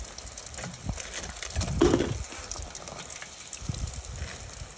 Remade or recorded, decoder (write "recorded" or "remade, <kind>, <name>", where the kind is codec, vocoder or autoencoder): recorded